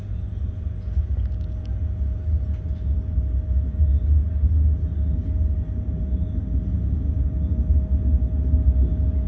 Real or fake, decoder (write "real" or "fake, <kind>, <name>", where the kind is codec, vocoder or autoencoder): real